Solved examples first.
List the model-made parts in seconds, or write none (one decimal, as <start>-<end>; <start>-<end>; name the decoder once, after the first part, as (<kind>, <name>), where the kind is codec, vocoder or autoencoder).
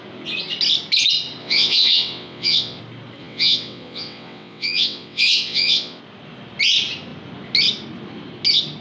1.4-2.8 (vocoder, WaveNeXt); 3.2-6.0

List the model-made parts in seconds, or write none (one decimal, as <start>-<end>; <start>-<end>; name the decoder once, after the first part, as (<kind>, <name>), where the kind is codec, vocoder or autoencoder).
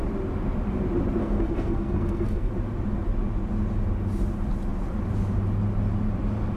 1.2-2.5 (codec, SNAC)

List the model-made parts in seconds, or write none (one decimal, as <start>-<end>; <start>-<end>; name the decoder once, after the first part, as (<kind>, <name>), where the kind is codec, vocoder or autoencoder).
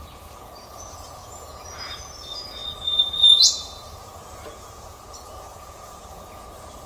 0.0-6.9 (vocoder, Vocos)